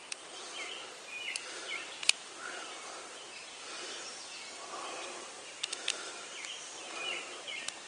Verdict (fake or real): fake